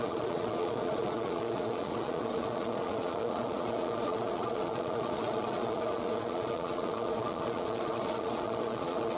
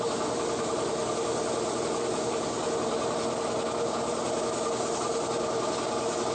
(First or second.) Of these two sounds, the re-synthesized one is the first